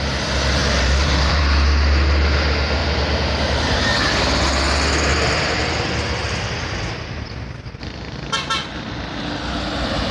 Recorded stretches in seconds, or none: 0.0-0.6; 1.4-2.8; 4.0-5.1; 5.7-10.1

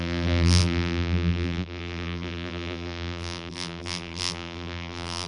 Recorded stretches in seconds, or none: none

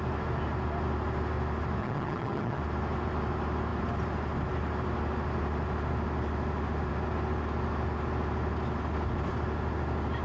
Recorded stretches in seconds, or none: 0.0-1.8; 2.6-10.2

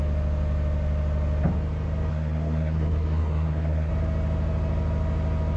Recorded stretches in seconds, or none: 0.0-2.1; 3.9-5.6

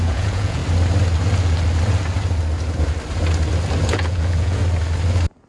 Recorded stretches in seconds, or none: 0.6-3.9; 4.6-5.5

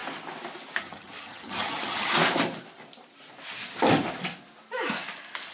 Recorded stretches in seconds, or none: 0.0-0.8; 2.1-5.5

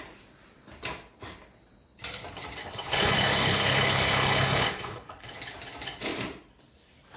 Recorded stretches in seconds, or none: 0.0-2.6; 5.4-7.2

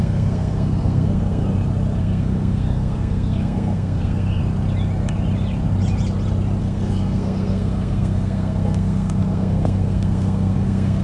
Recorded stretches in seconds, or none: 1.4-2.0; 4.4-6.6